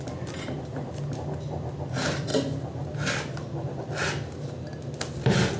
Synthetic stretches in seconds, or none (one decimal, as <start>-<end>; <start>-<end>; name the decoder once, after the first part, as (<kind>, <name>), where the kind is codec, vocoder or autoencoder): none